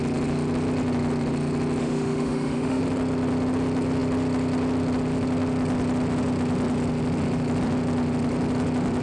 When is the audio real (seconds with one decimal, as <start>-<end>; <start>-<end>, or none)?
0.0-1.8; 2.8-9.0